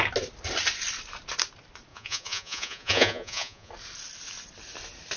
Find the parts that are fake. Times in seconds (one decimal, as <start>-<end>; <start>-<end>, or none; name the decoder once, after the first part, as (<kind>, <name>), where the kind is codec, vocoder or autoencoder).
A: 1.9-3.7 (vocoder, Vocos)